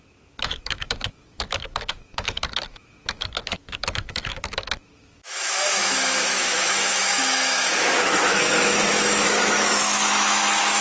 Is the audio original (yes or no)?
no